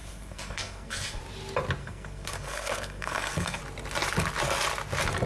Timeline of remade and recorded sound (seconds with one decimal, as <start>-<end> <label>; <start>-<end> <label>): 0.0-1.2 remade; 1.2-1.8 recorded; 1.8-3.6 remade; 3.6-5.3 recorded